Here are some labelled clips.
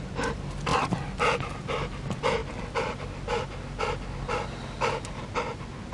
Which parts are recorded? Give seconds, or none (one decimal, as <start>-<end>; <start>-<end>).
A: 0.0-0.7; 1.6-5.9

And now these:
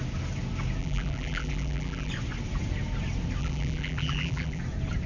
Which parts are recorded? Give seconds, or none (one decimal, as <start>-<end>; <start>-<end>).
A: 0.0-0.8; 2.1-3.4; 4.6-5.1

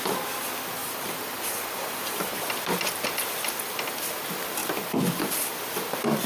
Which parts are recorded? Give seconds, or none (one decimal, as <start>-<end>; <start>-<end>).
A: 0.0-0.8; 2.4-6.3

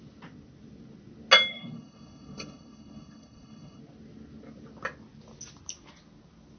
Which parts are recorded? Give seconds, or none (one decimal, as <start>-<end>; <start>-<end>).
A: 0.0-1.5; 3.8-6.6

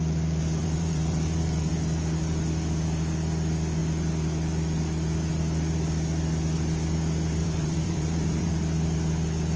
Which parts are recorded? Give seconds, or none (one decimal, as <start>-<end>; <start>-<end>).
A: 0.0-0.6; 1.7-7.4; 8.5-9.6